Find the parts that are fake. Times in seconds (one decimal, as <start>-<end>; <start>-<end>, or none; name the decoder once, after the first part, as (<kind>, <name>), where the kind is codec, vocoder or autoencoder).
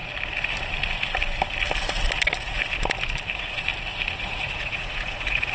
3.3-3.7 (vocoder, Vocos); 4.2-5.5